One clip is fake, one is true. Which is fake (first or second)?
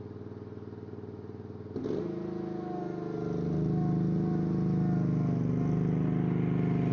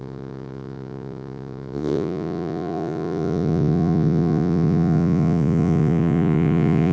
second